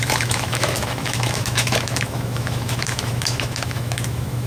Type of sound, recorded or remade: remade